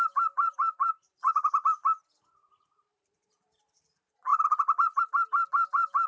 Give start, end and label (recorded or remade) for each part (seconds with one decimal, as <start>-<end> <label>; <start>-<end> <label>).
0.0-1.8 remade; 1.8-2.6 recorded; 2.6-6.1 remade